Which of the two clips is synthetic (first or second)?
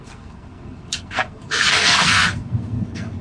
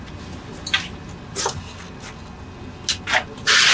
first